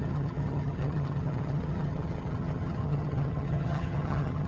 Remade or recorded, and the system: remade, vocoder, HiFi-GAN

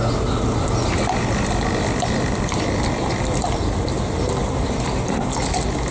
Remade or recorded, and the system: recorded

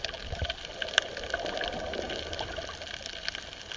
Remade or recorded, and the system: recorded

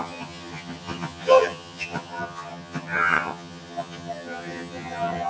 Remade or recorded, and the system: remade, vocoder, HiFi-GAN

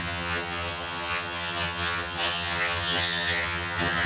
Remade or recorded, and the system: remade, vocoder, HiFi-GAN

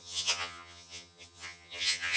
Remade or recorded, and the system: remade, vocoder, HiFi-GAN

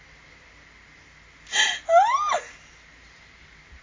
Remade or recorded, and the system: recorded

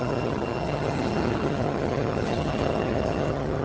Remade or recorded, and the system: remade, vocoder, HiFi-GAN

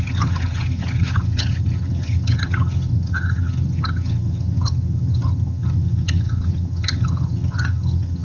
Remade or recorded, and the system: remade, vocoder, HiFi-GAN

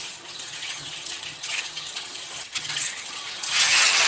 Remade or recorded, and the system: remade, vocoder, HiFi-GAN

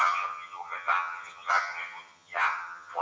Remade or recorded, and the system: remade, vocoder, HiFi-GAN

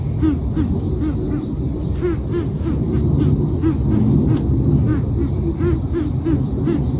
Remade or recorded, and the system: recorded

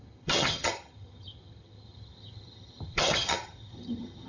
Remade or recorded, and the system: remade, vocoder, HiFi-GAN